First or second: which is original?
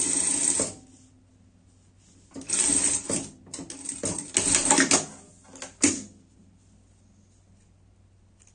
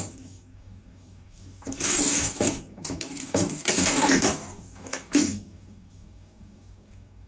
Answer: first